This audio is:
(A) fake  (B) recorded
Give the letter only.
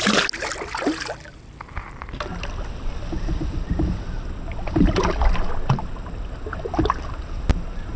B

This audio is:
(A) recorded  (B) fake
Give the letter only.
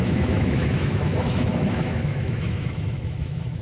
B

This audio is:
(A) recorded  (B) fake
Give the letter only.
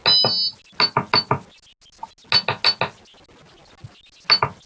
A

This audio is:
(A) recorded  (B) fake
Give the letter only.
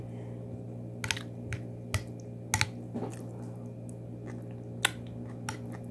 A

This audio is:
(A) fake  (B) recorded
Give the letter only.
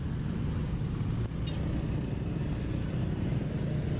B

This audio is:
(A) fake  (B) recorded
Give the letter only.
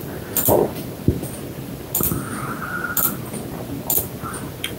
B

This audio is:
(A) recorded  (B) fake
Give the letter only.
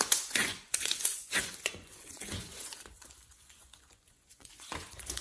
B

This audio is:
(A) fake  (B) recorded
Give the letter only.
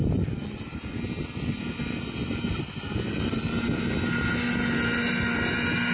B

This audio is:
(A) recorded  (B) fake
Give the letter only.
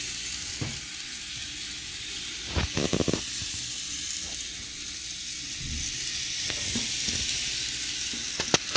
A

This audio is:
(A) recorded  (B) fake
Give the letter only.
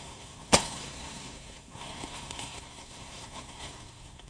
B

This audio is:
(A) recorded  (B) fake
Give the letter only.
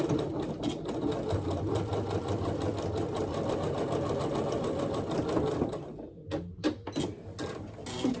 A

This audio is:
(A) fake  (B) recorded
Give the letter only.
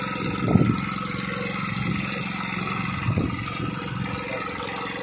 B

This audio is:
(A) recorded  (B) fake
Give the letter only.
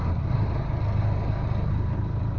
A